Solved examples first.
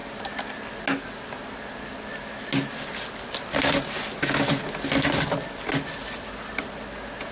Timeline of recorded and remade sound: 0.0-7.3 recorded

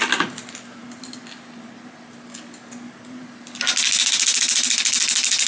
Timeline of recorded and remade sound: 0.0-5.5 recorded

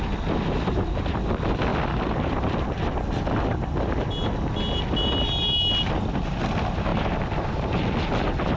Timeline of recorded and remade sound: 0.0-8.6 recorded

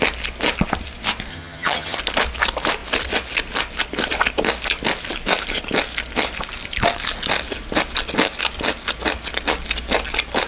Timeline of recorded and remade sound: 0.0-1.3 recorded; 1.3-2.0 remade; 2.0-10.5 recorded

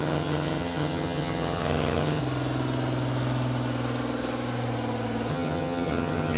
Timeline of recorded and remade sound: 0.0-2.2 remade; 2.2-5.3 recorded; 5.3-6.4 remade

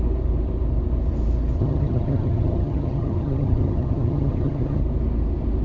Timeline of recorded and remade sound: 0.0-1.6 recorded; 1.6-4.8 remade; 4.8-5.6 recorded